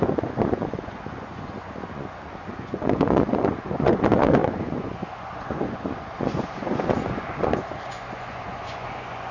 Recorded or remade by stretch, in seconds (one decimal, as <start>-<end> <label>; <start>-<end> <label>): 0.0-9.3 remade